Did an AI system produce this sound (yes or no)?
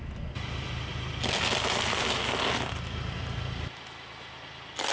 no